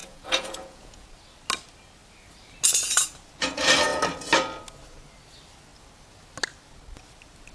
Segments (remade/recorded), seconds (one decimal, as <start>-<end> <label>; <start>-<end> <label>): 0.0-1.1 remade; 1.1-7.5 recorded